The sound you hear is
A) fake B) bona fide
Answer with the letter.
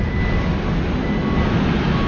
B